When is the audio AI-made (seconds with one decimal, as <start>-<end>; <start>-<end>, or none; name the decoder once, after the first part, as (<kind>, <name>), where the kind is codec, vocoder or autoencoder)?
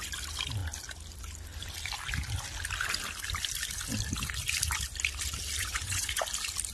5.6-6.2 (vocoder, Vocos)